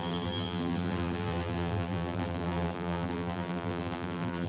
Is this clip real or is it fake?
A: fake